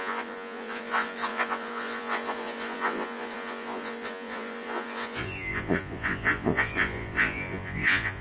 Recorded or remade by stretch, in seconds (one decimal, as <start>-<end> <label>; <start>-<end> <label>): 0.0-8.2 remade